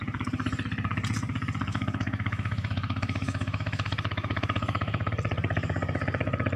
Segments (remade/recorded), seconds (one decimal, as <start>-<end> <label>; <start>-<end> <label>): 0.0-1.7 recorded; 1.7-5.1 remade; 5.1-6.6 recorded